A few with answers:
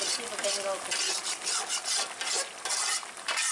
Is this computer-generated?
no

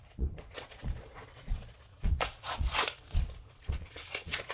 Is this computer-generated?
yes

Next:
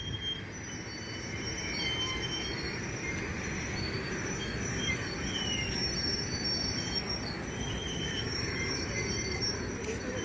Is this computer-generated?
no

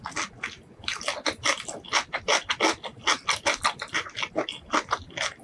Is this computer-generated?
no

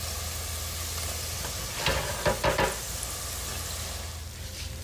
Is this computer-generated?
no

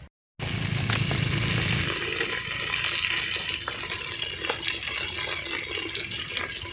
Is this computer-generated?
no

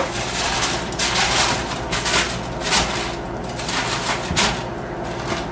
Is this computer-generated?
no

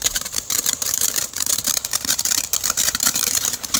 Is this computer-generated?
yes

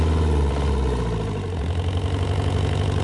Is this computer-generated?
no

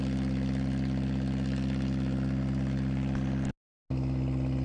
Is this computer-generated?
no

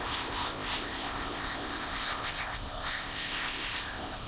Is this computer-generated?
yes